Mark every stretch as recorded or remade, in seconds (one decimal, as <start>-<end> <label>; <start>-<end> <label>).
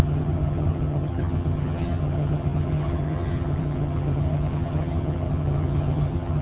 0.0-6.4 remade